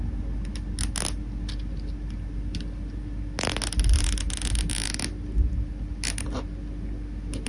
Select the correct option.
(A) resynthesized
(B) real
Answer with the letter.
B